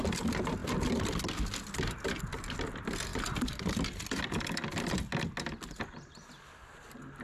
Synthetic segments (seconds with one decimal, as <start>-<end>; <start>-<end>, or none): none